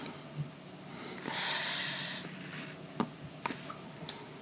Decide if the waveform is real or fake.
real